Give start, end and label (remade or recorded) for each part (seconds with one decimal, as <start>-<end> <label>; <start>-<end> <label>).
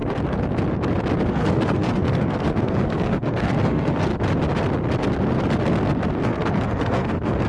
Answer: 0.0-1.3 recorded; 1.3-4.1 remade; 4.1-6.2 recorded; 6.2-7.5 remade